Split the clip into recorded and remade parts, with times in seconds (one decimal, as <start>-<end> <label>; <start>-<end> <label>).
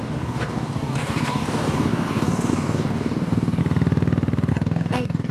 0.0-3.6 remade; 3.6-4.5 recorded; 4.5-5.3 remade